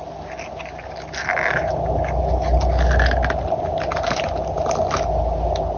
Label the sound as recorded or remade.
recorded